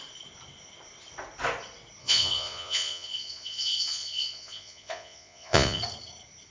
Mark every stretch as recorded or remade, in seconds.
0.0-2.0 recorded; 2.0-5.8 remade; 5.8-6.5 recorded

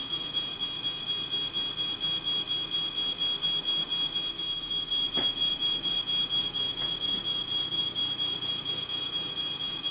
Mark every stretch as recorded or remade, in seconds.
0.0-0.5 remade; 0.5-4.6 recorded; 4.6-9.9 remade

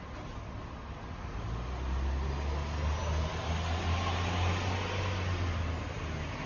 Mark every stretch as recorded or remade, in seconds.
0.0-6.5 recorded